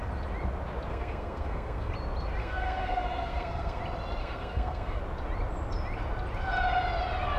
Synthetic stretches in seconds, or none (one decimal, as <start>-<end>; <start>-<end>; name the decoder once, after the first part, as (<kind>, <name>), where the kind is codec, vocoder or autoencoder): 0.9-1.9 (codec, SNAC); 2.4-3.8; 4.2-5.0